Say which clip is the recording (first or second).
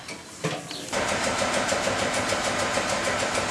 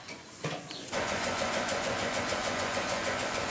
first